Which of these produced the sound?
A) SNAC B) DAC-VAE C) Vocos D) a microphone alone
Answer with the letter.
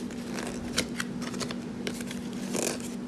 D